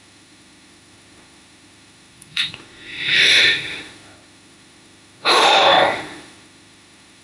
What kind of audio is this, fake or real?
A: fake